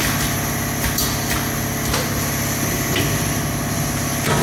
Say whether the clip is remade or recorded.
recorded